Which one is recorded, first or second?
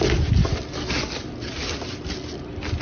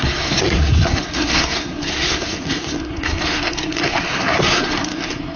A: first